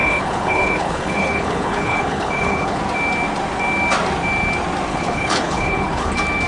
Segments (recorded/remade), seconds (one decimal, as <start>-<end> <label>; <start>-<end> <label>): 0.0-2.8 remade; 2.8-4.9 recorded; 4.9-6.1 remade; 6.1-6.5 recorded